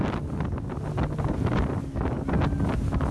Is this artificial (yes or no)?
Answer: no